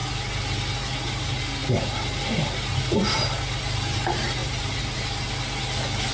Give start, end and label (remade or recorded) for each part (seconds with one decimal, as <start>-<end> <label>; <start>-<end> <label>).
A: 0.0-1.6 recorded; 1.6-2.2 remade; 2.2-4.4 recorded; 4.4-5.3 remade; 5.3-6.1 recorded